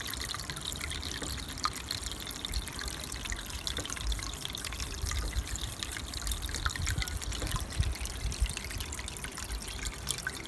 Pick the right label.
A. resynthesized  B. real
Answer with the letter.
B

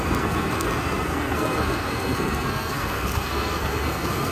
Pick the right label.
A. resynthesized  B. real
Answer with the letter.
A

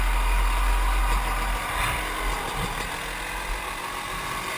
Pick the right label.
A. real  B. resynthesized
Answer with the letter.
A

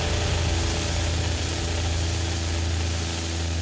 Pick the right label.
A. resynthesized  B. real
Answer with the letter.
B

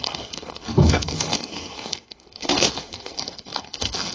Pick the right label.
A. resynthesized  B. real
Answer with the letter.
A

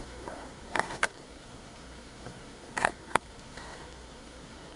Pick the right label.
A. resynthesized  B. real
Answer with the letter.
A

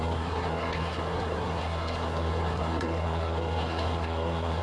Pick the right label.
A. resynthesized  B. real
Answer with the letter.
A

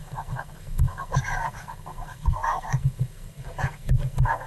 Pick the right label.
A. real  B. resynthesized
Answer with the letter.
B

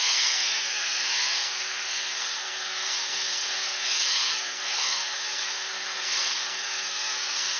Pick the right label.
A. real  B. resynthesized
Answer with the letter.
B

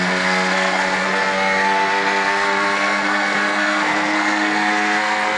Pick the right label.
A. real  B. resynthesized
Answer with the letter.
B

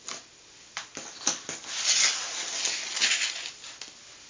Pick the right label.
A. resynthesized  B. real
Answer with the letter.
B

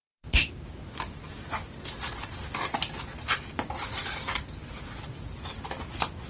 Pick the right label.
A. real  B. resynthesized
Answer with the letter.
A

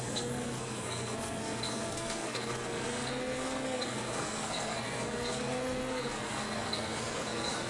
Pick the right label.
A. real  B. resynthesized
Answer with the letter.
B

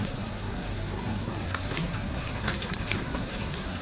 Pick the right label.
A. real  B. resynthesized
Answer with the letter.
B